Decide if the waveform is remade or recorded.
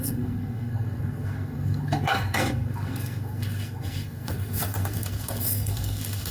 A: remade